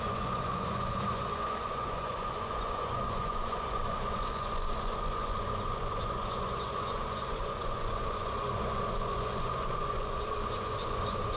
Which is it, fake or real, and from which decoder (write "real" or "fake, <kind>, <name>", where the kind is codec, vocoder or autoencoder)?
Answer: fake, vocoder, Vocos